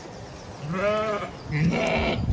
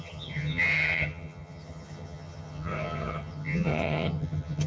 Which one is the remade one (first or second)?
second